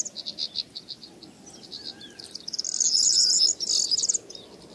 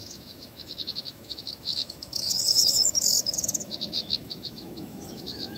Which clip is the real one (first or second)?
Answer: first